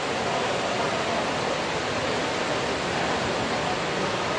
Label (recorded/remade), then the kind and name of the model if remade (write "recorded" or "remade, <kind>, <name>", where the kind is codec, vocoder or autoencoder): recorded